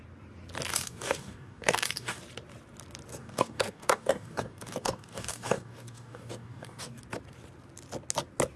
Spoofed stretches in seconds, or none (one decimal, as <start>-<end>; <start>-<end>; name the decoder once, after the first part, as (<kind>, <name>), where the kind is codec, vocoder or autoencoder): 0.7-2.2 (codec, DAC); 3.1-7.0